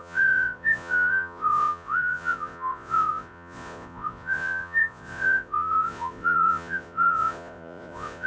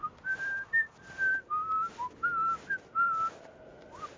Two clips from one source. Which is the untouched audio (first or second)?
second